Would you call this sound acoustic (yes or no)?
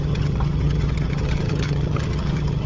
no